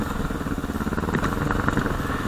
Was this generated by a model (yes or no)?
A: no